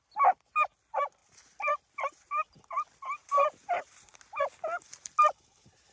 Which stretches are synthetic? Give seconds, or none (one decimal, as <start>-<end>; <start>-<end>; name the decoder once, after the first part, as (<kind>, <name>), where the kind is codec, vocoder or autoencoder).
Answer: 3.2-4.3 (vocoder, BigVGAN v2); 5.2-5.9